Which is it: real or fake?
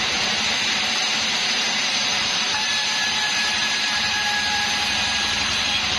fake